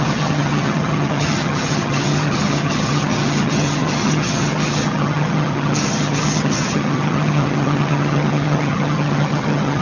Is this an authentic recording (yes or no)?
no